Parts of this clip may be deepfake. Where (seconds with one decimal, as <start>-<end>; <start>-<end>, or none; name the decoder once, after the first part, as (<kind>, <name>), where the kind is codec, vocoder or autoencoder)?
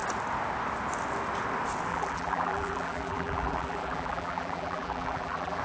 1.9-5.6 (vocoder, BigVGAN v2)